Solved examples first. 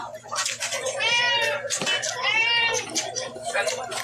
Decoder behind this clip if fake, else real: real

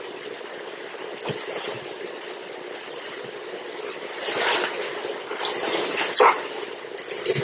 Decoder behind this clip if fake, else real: real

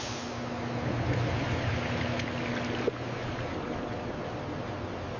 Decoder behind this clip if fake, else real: real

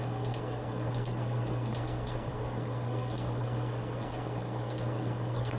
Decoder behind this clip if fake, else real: fake, codec, SNAC